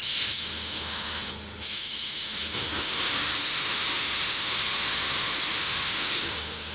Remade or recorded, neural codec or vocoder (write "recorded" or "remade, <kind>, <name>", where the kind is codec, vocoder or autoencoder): remade, autoencoder, DAC-VAE